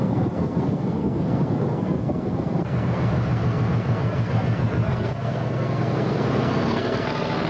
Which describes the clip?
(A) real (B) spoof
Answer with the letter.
B